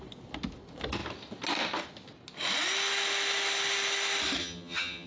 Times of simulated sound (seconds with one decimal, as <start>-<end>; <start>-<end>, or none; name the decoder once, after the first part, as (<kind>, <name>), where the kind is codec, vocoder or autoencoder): 4.4-5.1 (vocoder, HiFi-GAN)